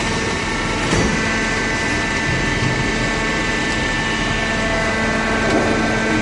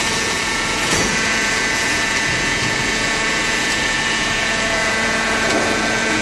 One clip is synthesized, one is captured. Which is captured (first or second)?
first